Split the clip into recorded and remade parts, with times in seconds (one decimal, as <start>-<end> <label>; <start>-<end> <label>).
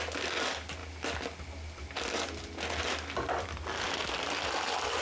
0.0-5.0 recorded